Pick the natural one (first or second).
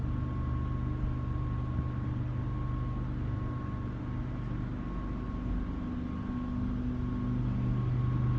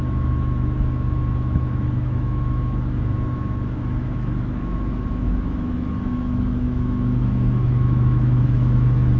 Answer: first